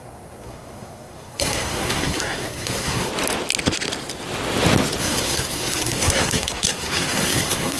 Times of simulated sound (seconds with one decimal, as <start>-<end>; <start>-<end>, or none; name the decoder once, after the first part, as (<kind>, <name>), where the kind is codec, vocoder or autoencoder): 0.0-3.1 (codec, SNAC); 5.0-7.8